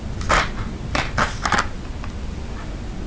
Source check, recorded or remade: recorded